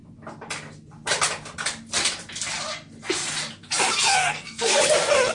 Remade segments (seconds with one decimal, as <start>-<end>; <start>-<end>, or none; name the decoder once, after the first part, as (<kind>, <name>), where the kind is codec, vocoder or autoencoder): 4.1-4.8 (codec, SNAC)